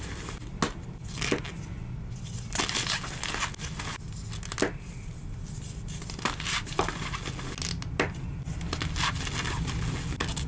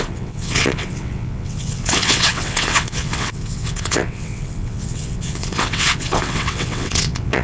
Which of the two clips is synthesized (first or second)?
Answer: second